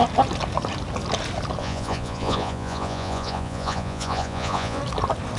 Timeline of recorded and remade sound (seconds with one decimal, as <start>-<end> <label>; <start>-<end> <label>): 0.0-1.6 recorded; 1.6-4.8 remade; 4.8-5.4 recorded